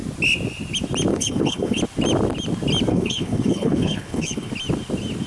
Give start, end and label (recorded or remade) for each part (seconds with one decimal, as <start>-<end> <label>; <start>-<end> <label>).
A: 0.0-1.1 recorded; 1.1-1.8 remade; 1.8-2.9 recorded; 2.9-4.5 remade; 4.5-5.3 recorded